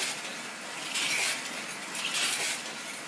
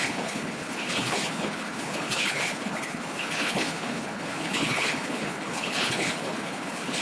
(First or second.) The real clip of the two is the first